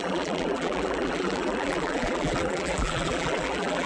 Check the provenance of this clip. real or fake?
fake